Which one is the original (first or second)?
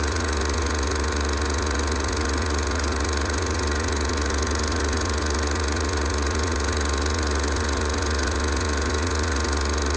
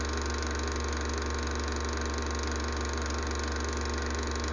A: second